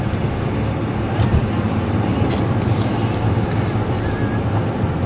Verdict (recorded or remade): remade